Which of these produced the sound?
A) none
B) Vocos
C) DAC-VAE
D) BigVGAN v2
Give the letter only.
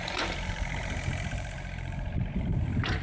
D